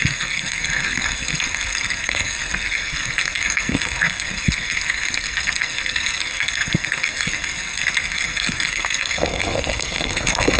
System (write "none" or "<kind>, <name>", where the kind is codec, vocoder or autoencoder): codec, SNAC